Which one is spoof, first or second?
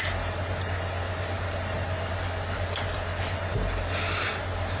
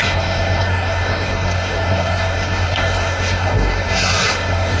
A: second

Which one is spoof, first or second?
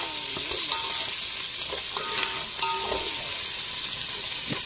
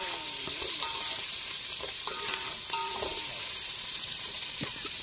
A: second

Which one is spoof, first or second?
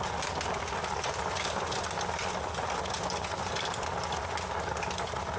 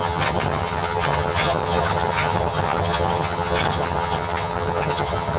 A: second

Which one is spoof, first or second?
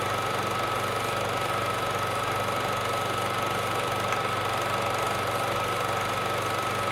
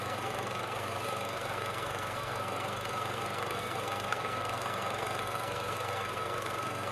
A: second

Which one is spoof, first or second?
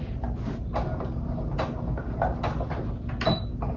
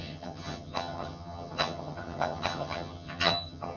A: second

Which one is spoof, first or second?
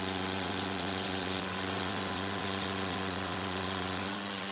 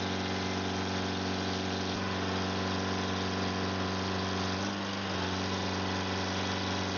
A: first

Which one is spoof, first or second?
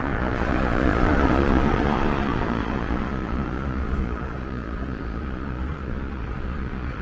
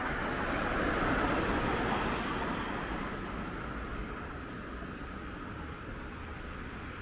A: first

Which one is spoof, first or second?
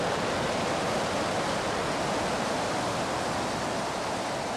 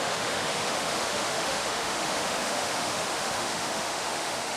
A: second